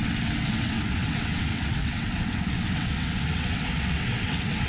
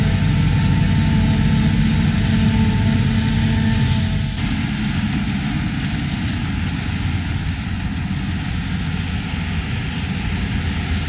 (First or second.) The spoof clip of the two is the first